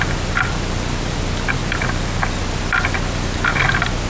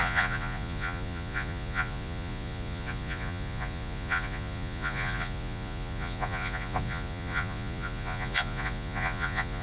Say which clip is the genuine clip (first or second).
first